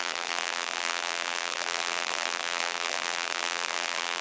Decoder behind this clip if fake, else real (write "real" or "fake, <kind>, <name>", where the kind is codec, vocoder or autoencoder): fake, vocoder, BigVGAN v2